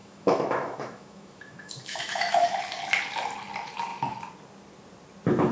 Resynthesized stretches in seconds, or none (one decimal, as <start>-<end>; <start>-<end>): 0.0-2.6